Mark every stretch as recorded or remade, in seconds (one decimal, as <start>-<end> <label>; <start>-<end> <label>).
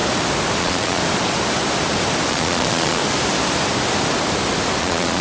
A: 0.0-0.6 recorded; 0.6-1.0 remade; 1.0-2.3 recorded; 2.3-3.0 remade; 3.0-4.8 recorded; 4.8-5.2 remade